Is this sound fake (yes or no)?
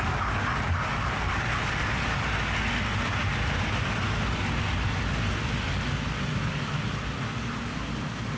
no